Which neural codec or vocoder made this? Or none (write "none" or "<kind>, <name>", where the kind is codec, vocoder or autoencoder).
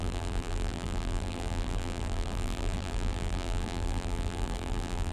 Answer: vocoder, BigVGAN v2